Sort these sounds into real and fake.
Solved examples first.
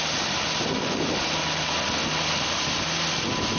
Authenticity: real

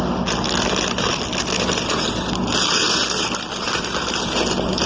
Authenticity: real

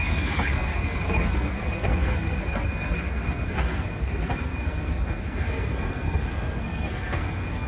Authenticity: fake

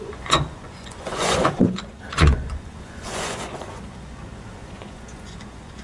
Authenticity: fake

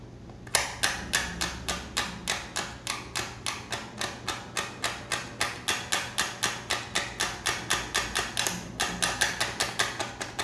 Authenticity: real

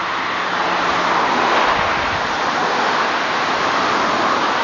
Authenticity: real